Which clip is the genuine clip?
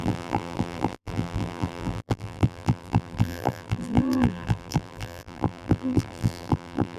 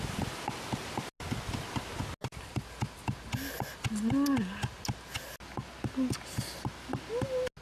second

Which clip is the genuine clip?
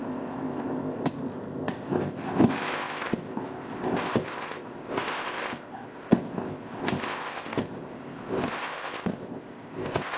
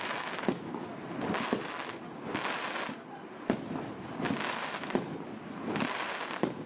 second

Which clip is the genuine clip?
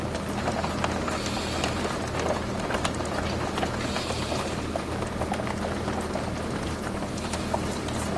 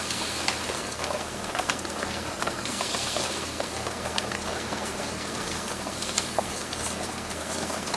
first